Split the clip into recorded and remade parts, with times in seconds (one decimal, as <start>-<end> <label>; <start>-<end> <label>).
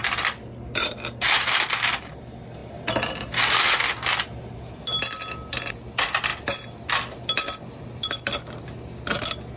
0.0-9.6 recorded